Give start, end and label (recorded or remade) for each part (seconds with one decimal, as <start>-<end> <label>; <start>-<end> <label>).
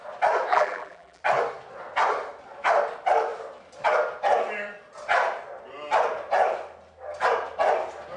0.0-0.5 recorded; 0.5-1.2 remade; 1.2-8.2 recorded